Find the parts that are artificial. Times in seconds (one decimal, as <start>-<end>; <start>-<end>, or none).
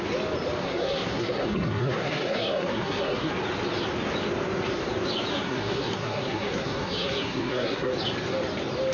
0.6-3.3; 5.3-7.9